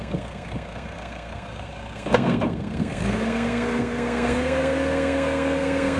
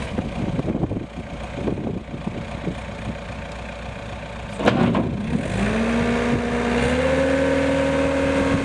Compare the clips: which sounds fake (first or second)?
first